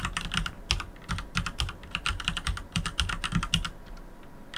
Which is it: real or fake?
real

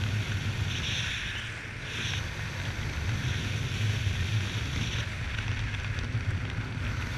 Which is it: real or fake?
real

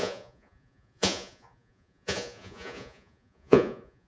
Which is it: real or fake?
fake